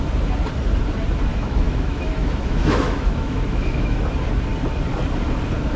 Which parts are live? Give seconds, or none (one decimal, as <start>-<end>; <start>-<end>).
0.0-1.3; 4.0-5.8